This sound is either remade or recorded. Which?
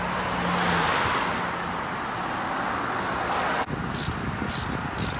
recorded